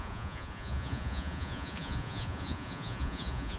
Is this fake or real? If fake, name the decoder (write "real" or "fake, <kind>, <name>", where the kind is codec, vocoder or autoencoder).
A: fake, vocoder, Vocos